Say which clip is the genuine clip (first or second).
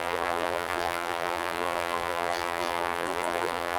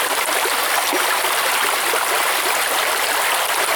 second